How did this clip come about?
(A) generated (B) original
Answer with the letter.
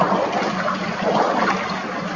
B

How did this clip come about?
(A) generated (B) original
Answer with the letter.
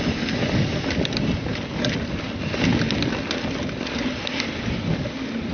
B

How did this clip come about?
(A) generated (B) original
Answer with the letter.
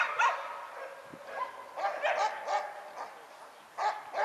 B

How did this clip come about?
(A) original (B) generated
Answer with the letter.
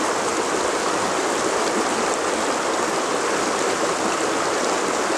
A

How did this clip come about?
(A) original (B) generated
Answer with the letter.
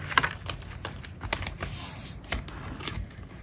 A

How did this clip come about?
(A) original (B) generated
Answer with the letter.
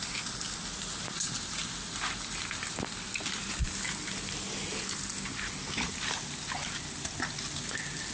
A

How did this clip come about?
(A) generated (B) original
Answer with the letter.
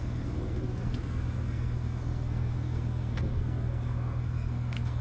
A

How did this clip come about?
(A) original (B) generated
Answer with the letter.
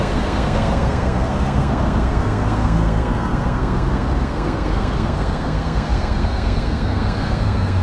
B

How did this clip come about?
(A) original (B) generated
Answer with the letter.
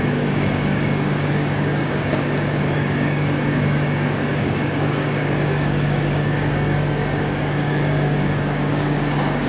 B